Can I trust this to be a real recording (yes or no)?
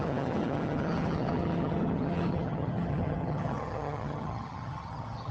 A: no